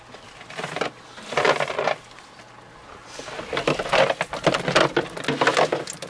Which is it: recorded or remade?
recorded